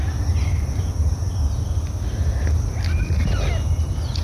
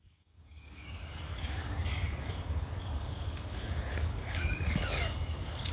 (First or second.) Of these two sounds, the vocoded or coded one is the second